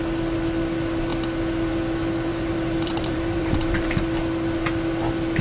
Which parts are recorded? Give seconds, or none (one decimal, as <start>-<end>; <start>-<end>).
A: 0.0-2.3; 4.0-5.4